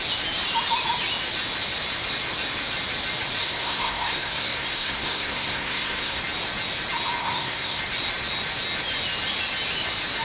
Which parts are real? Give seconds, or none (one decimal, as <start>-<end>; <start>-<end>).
0.0-3.4; 6.2-7.2; 7.8-10.2

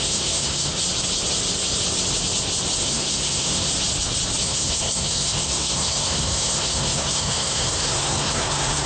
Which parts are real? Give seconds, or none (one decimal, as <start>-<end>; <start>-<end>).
0.7-2.8; 3.7-4.4

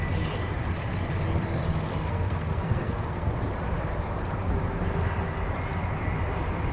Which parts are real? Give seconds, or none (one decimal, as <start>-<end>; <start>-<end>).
0.0-1.9; 3.3-6.7

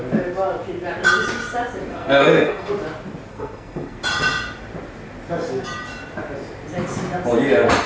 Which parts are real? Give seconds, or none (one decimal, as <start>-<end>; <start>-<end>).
0.0-1.9; 2.7-3.3; 4.0-7.9

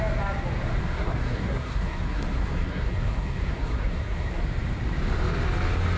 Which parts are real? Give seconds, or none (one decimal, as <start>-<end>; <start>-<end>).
0.0-0.8; 4.4-6.0